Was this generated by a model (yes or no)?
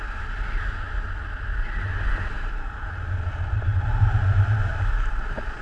no